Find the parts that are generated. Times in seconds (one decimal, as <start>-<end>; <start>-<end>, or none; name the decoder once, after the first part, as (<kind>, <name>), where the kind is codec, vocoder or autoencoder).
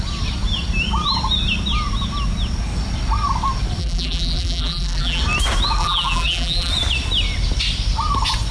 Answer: 3.8-5.2 (vocoder, BigVGAN v2); 5.8-6.7